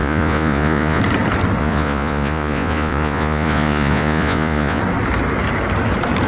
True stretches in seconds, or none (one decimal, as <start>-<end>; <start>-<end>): 1.0-1.6; 4.8-6.3